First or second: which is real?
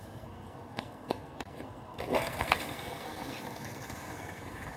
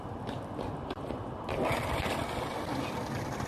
second